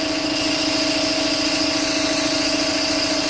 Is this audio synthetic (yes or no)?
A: no